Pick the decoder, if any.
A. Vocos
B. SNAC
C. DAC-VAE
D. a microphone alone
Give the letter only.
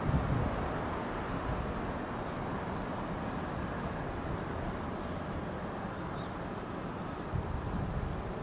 D